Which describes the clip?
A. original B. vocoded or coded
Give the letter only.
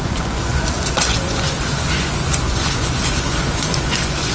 B